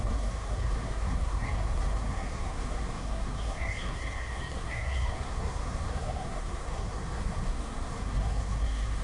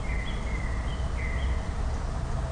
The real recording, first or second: second